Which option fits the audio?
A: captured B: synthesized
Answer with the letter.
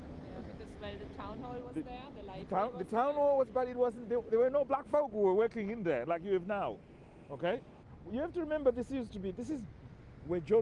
A